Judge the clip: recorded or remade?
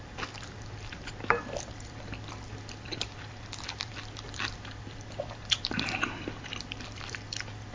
remade